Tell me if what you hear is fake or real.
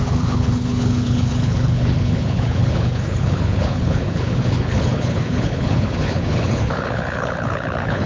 fake